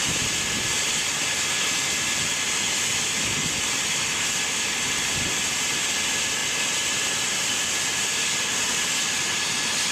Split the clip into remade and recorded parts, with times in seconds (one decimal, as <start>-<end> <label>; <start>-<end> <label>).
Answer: 0.0-6.4 recorded; 6.4-7.7 remade; 7.7-9.9 recorded